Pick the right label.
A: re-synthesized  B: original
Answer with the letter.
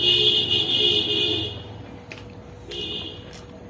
B